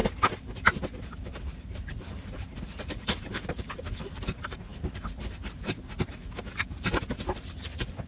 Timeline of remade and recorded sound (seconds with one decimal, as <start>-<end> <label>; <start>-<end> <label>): 0.0-8.1 remade